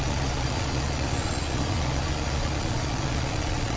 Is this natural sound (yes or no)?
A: no